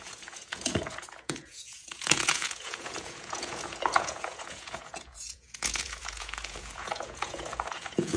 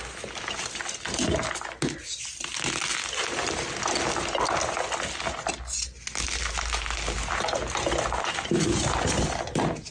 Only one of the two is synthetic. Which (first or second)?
first